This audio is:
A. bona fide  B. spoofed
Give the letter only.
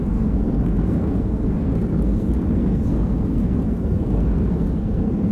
B